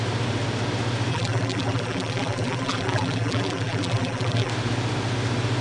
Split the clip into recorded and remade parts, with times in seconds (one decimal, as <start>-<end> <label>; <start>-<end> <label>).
0.0-1.1 recorded; 1.1-4.5 remade; 4.5-5.6 recorded